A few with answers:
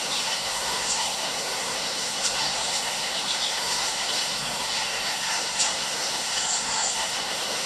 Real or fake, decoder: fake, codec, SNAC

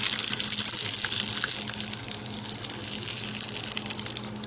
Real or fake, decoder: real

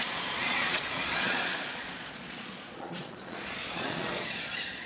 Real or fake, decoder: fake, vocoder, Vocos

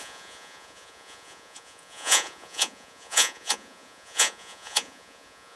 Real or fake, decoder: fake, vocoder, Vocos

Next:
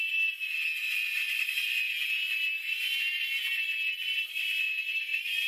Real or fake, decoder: real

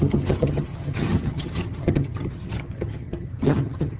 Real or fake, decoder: fake, vocoder, HiFi-GAN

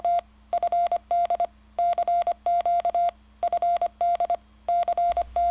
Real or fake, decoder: real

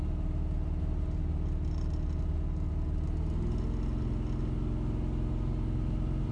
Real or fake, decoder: real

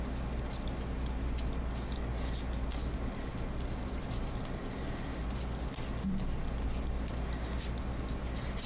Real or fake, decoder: real